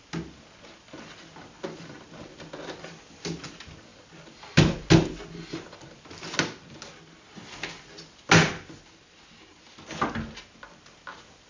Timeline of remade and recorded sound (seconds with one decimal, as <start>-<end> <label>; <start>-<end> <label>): 0.0-11.5 recorded